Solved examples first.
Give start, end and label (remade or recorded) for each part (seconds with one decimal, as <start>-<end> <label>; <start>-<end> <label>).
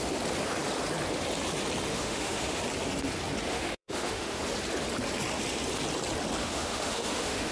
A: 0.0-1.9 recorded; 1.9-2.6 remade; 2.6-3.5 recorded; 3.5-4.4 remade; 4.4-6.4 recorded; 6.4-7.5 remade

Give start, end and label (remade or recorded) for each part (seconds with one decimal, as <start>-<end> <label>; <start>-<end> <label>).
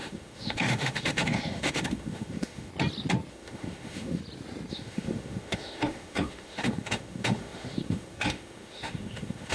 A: 0.0-2.7 remade; 2.7-3.3 recorded; 3.3-4.2 remade; 4.2-4.7 recorded; 4.7-9.5 remade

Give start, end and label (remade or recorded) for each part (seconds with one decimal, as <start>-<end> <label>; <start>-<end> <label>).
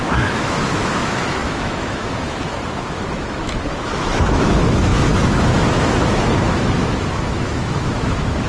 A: 0.0-8.5 remade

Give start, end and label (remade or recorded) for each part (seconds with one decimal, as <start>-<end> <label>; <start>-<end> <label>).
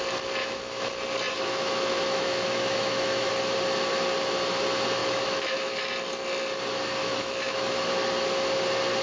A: 0.0-0.4 recorded; 0.4-0.9 remade; 0.9-1.3 recorded; 1.3-3.3 remade; 3.3-5.0 recorded; 5.0-5.9 remade; 5.9-7.0 recorded; 7.0-7.9 remade; 7.9-9.0 recorded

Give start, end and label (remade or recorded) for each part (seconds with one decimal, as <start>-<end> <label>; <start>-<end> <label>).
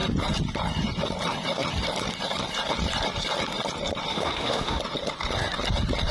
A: 0.0-4.1 recorded; 4.1-4.8 remade; 4.8-6.1 recorded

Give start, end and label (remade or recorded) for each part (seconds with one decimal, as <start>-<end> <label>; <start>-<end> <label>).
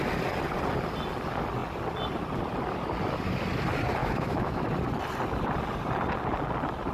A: 0.0-4.0 recorded; 4.0-4.6 remade; 4.6-6.9 recorded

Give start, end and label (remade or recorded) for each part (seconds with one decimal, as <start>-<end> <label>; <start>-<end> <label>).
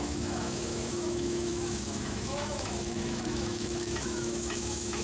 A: 0.0-5.0 remade